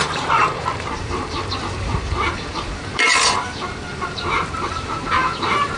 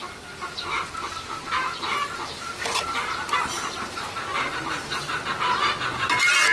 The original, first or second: second